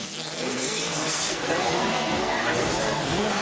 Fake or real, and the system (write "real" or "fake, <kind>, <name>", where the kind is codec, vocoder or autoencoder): fake, codec, SNAC